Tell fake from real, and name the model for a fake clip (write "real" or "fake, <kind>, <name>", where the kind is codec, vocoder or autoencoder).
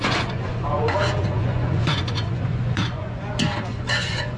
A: fake, vocoder, Vocos